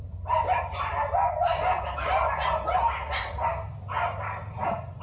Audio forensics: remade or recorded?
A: recorded